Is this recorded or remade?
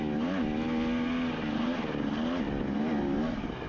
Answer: recorded